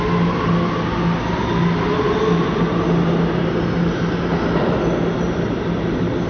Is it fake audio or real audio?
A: real